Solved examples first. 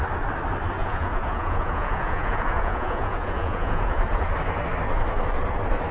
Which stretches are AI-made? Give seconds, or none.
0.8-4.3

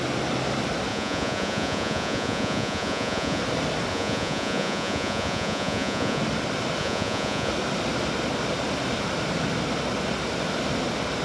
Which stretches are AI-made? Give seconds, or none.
0.9-3.4; 3.9-6.2; 6.8-7.5

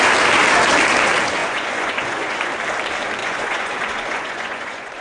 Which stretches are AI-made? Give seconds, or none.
1.4-2.5; 3.2-5.0

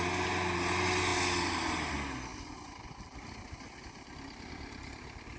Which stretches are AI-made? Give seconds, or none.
none

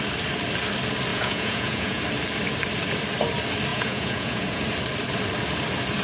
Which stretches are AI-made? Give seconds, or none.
1.1-2.0; 3.7-4.6

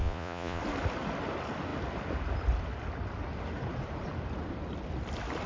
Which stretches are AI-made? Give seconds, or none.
0.0-0.6

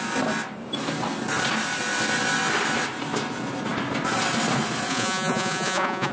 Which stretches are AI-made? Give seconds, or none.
4.9-6.1

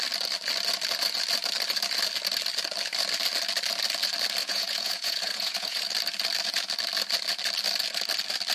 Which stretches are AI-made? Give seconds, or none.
4.4-5.9